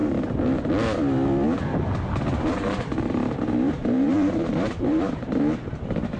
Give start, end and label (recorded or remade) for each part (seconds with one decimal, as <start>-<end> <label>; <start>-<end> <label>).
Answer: 0.0-0.7 remade; 0.7-2.3 recorded; 2.3-6.2 remade